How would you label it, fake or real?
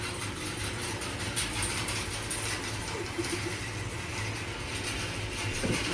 real